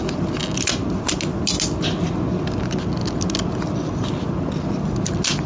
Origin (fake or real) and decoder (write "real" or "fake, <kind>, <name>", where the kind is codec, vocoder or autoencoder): real